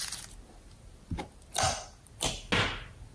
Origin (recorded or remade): recorded